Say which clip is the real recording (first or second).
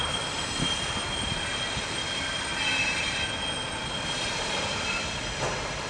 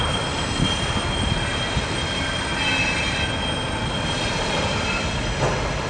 second